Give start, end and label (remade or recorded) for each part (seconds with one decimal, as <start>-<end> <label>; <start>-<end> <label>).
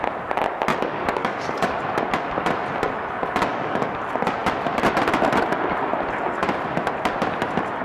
0.0-0.7 recorded; 0.7-1.8 remade; 1.8-3.5 recorded; 3.5-4.0 remade; 4.0-7.8 recorded